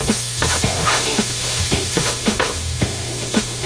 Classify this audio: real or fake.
fake